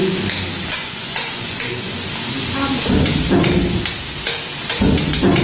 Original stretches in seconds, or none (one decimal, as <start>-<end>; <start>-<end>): 0.0-0.7; 2.1-5.4